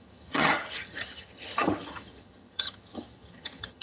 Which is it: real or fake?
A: fake